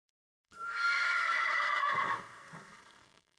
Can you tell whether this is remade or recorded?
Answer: remade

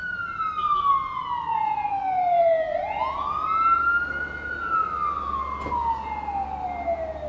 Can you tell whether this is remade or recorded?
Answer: recorded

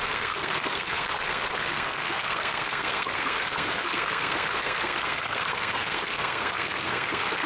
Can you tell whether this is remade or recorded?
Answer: remade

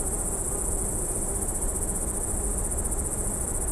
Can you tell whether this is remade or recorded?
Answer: recorded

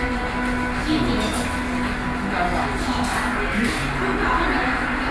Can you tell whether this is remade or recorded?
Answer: recorded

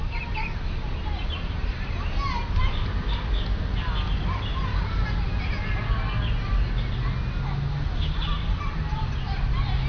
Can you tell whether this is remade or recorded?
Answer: recorded